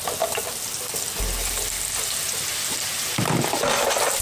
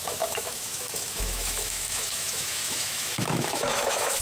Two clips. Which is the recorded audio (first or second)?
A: first